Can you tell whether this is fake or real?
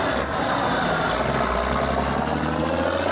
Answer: real